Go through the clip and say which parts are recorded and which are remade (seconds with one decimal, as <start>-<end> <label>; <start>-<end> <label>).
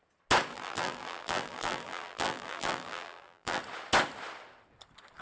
0.0-0.5 recorded; 0.5-3.6 remade; 3.6-5.2 recorded